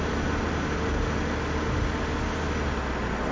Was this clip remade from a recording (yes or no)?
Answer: no